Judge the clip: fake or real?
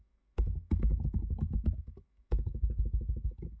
fake